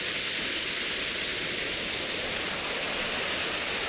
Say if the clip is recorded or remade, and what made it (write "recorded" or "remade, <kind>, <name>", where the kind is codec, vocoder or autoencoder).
recorded